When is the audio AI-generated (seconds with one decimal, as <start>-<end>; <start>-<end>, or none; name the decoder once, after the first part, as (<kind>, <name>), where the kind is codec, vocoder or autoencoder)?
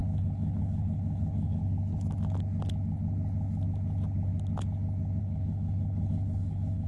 0.0-1.6 (codec, HILCodec); 5.2-6.9